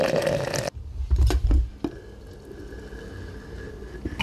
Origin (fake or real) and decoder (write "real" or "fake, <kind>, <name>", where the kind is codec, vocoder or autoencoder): real